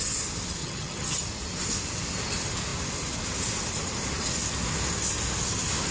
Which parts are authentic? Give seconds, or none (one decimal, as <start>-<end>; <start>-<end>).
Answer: 0.0-0.6; 1.2-5.9